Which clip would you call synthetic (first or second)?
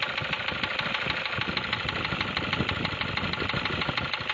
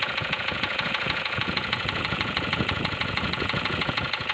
second